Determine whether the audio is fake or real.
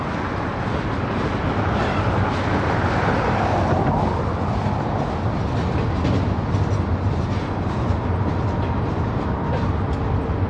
real